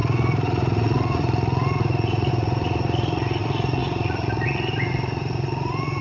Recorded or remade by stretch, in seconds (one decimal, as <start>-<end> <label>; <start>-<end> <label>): 0.0-6.0 remade